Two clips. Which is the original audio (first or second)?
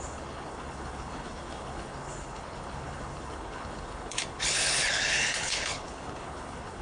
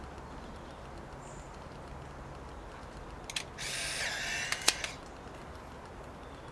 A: second